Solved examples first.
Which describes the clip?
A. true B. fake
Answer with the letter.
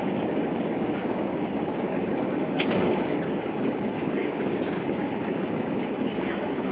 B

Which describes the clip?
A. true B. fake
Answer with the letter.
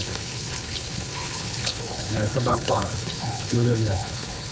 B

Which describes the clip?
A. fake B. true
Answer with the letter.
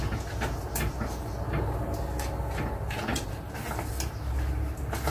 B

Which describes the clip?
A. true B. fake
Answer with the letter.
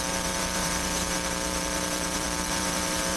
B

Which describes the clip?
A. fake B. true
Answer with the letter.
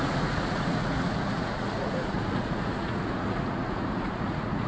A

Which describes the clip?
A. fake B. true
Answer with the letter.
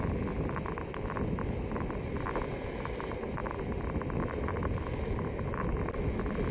B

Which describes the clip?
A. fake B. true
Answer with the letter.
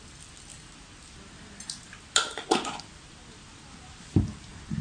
B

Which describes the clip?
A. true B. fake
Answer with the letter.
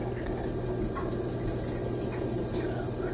A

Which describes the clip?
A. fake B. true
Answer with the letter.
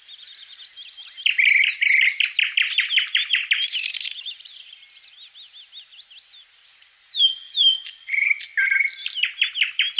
B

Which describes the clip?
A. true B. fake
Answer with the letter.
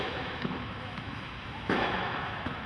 B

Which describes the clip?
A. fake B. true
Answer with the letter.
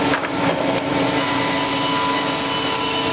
B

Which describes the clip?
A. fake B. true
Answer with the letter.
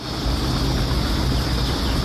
B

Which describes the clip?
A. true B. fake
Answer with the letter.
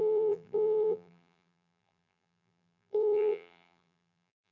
B